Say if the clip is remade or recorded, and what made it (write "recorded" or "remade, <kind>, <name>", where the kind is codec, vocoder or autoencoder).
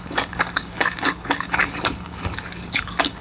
remade, codec, DAC